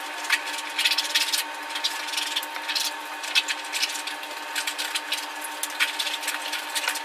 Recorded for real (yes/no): yes